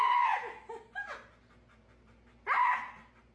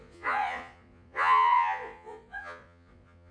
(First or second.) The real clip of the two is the first